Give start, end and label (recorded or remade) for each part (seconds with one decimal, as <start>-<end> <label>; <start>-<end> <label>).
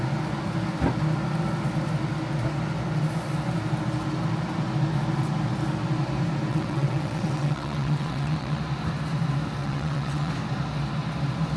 0.0-6.5 recorded; 6.5-8.6 remade; 8.6-9.6 recorded; 9.6-10.3 remade; 10.3-11.6 recorded